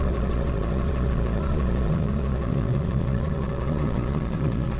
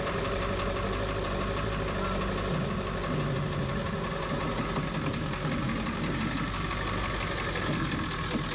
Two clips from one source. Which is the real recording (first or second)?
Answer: second